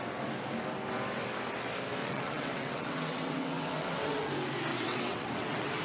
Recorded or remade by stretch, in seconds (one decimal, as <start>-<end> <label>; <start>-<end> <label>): 0.0-2.0 recorded; 2.0-4.3 remade; 4.3-4.7 recorded; 4.7-5.8 remade